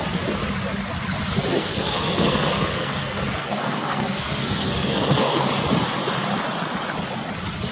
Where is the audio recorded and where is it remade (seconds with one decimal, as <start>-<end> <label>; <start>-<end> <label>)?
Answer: 0.0-1.5 recorded; 1.5-5.5 remade; 5.5-7.7 recorded